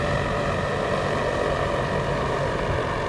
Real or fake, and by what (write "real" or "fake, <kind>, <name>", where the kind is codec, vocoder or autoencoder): real